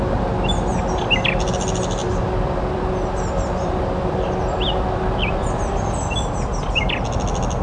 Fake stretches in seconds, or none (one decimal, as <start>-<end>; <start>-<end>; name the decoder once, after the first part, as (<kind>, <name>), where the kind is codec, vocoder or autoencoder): 0.7-1.5 (vocoder, BigVGAN v2); 2.0-5.5